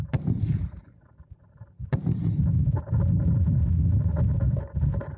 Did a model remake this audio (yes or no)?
no